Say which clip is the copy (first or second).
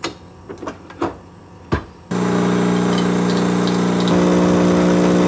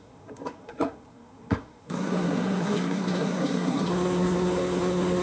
second